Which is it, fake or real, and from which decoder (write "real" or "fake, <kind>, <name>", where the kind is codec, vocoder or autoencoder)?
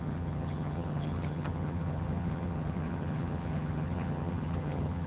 fake, vocoder, HiFi-GAN